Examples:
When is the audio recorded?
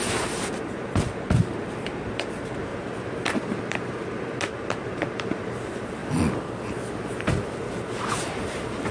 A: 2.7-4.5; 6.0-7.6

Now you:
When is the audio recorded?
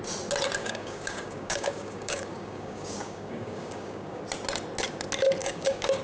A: 0.0-0.6; 4.2-5.4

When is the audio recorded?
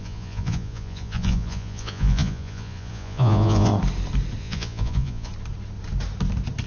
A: 3.7-4.4; 5.3-6.7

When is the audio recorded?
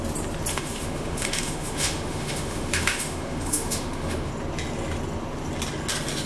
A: 0.0-0.5; 4.3-6.3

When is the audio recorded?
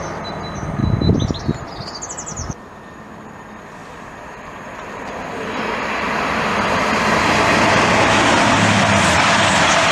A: 0.0-3.8; 6.7-9.9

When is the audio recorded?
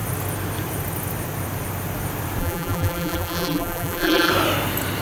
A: 0.0-2.4; 4.3-5.0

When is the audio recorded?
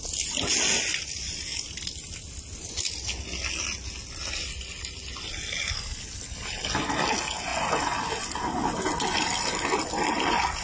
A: 0.0-10.6